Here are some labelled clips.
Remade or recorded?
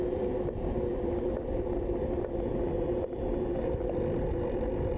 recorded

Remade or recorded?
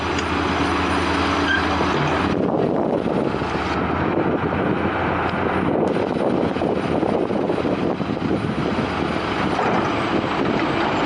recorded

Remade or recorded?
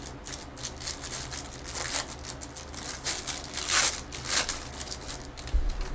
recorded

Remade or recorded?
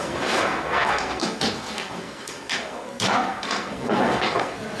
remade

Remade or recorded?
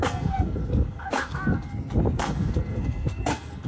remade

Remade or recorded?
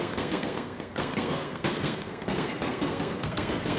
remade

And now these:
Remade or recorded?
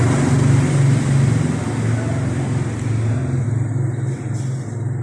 recorded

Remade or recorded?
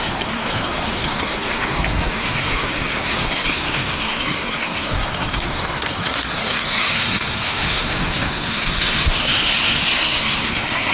remade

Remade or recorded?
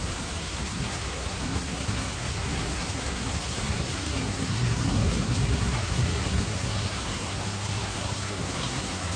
remade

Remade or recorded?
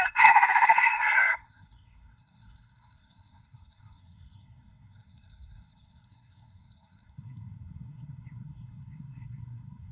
remade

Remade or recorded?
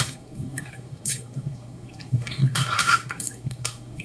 remade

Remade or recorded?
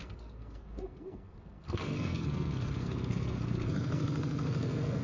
remade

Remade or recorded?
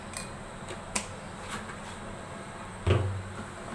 recorded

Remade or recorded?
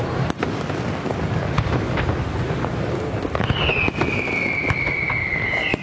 recorded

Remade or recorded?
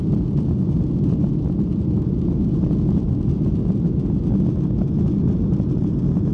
recorded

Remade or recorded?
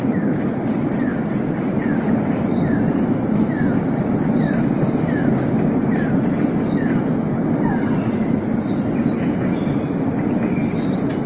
recorded